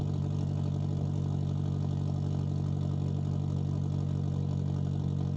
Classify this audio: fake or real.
real